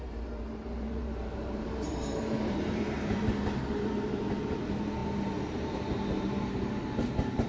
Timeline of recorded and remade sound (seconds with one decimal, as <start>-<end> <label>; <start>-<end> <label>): 0.0-7.5 remade